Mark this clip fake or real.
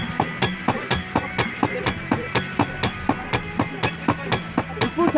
real